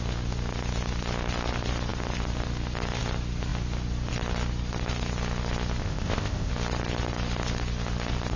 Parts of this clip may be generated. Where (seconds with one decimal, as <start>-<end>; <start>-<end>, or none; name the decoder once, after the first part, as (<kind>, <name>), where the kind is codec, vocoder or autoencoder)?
5.8-6.5 (codec, ZipCodec)